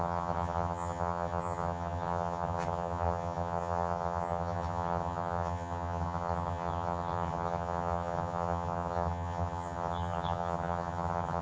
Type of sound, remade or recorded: remade